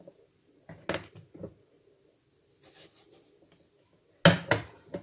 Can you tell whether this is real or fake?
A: real